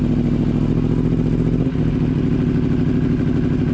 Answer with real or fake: real